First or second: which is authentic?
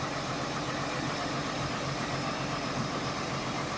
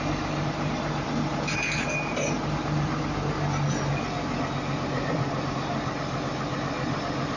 second